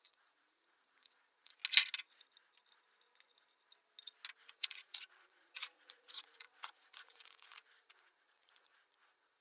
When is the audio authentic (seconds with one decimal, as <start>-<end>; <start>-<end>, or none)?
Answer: 1.6-4.4